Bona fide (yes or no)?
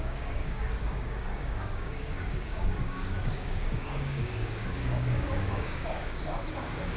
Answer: no